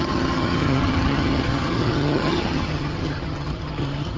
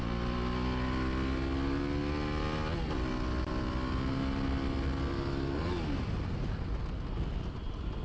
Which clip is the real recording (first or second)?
second